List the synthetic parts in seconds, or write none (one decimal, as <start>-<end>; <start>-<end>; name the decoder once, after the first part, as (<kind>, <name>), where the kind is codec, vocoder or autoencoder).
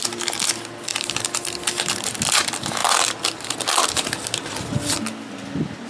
0.9-2.1 (vocoder, BigVGAN v2)